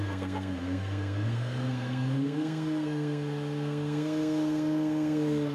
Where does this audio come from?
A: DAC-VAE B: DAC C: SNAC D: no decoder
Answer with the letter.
C